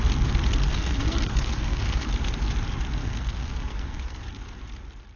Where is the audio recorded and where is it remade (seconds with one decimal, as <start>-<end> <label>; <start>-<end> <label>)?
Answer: 0.0-0.6 recorded; 0.6-2.1 remade; 2.1-3.0 recorded; 3.0-4.2 remade; 4.2-5.2 recorded